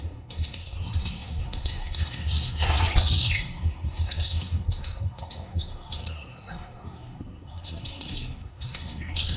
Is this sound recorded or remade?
remade